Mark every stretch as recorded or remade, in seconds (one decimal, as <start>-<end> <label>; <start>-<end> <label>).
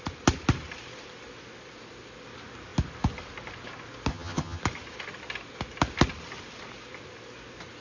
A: 0.0-4.1 recorded; 4.1-4.6 remade; 4.6-7.8 recorded